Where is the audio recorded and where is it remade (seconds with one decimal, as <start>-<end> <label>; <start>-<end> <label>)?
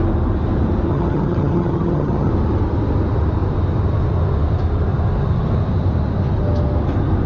0.0-0.9 recorded; 0.9-2.3 remade; 2.3-7.3 recorded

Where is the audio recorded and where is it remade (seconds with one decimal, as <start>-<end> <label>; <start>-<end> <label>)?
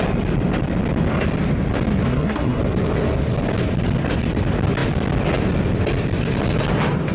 0.0-2.1 recorded; 2.1-2.6 remade; 2.6-7.1 recorded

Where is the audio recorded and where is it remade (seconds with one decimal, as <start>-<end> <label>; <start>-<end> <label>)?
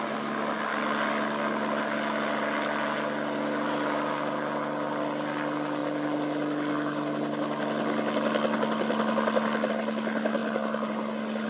0.0-11.5 recorded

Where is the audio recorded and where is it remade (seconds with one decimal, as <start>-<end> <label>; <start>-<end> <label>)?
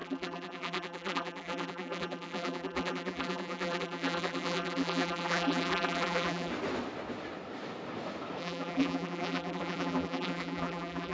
0.0-6.5 remade; 6.5-8.4 recorded; 8.4-11.1 remade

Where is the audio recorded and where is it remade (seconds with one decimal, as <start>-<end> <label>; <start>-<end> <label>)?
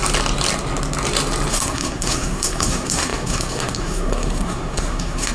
0.0-1.5 recorded; 1.5-5.3 remade